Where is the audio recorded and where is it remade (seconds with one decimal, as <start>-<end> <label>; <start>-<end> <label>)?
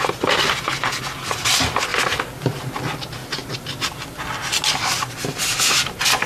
0.0-6.3 recorded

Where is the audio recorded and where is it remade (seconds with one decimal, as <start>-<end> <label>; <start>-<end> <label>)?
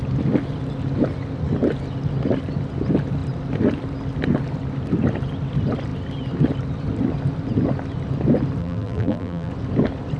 0.0-8.6 recorded; 8.6-9.5 remade; 9.5-10.2 recorded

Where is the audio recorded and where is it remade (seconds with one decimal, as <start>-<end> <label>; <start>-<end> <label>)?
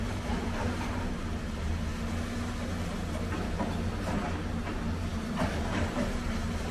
0.0-1.9 remade; 1.9-4.0 recorded; 4.0-6.7 remade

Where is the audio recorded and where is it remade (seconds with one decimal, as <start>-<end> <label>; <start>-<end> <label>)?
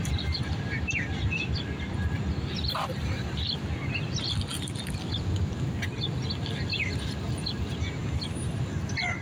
0.0-9.2 recorded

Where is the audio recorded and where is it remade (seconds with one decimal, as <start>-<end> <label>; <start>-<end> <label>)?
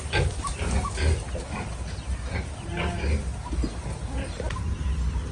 0.0-2.3 recorded; 2.3-2.8 remade; 2.8-5.3 recorded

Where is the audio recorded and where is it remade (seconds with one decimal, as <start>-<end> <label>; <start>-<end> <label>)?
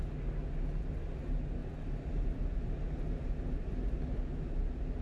0.0-1.6 recorded; 1.6-3.3 remade; 3.3-5.0 recorded